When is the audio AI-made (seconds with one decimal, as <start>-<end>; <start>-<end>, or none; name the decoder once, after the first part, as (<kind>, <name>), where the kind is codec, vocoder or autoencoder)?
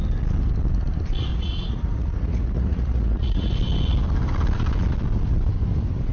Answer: 1.3-3.5 (vocoder, Vocos)